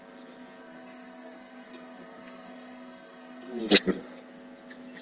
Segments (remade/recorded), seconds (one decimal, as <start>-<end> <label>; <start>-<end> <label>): 0.0-0.6 recorded; 0.6-3.6 remade; 3.6-5.0 recorded